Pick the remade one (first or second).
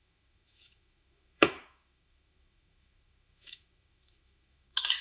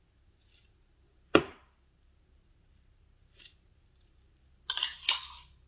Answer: first